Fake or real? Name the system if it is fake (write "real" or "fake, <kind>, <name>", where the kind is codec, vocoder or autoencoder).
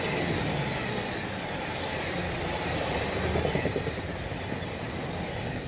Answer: real